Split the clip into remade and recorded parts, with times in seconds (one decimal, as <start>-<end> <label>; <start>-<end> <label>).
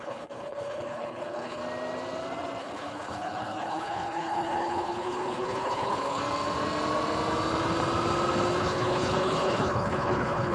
0.0-1.6 remade; 1.6-2.6 recorded; 2.6-6.2 remade; 6.2-8.6 recorded; 8.6-10.5 remade